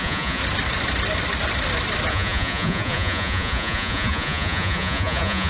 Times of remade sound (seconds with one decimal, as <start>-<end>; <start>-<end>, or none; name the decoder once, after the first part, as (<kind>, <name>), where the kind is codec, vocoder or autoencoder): 0.0-0.4 (vocoder, Vocos); 2.1-5.5